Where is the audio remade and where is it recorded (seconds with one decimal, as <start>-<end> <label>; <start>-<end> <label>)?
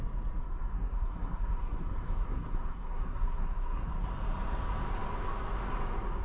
0.0-0.4 recorded; 0.4-4.1 remade; 4.1-6.2 recorded